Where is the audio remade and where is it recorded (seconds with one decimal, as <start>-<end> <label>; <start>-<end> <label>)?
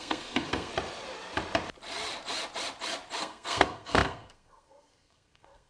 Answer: 0.0-0.7 remade; 0.7-3.2 recorded; 3.2-5.7 remade